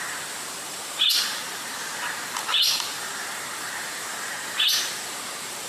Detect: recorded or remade remade